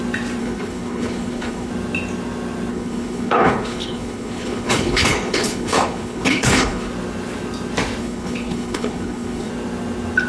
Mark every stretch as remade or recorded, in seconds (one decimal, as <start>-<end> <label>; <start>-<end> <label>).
0.0-0.4 recorded; 0.4-1.7 remade; 1.7-2.7 recorded; 2.7-6.9 remade; 6.9-8.0 recorded; 8.0-9.5 remade; 9.5-10.3 recorded